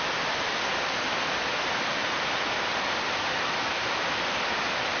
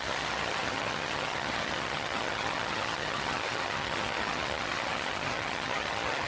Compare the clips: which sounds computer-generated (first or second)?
second